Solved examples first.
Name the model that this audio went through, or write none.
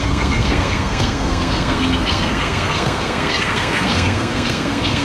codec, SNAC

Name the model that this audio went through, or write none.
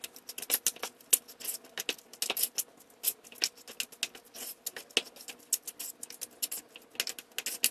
none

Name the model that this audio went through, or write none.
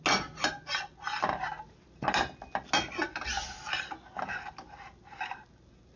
none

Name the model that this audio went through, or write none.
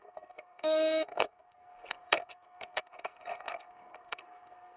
codec, SNAC